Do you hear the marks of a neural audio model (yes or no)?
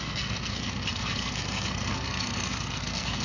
yes